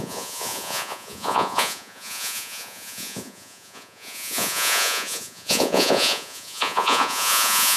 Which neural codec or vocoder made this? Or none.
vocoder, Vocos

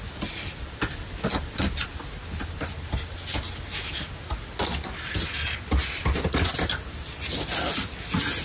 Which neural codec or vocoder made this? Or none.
none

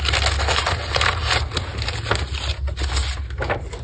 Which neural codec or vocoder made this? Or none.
none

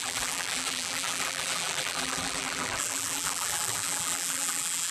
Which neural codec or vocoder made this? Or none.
vocoder, BigVGAN v2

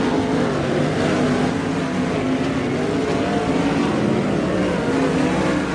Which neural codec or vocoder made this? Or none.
none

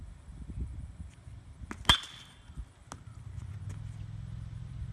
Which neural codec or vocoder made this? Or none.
none